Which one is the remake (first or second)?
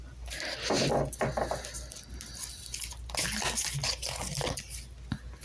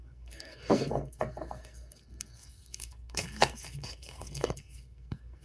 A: second